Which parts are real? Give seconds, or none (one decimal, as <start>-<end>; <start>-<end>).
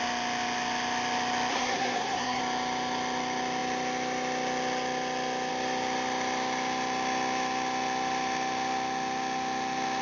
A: 0.0-1.5; 2.4-10.0